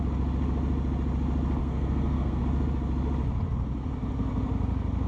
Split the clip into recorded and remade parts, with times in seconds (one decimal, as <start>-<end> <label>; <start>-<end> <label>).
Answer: 0.0-1.6 recorded; 1.6-2.4 remade; 2.4-5.1 recorded